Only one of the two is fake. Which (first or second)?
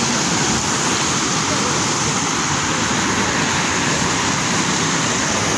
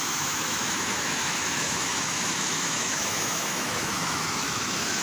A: second